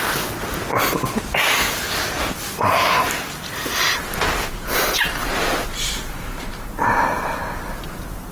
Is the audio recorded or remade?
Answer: recorded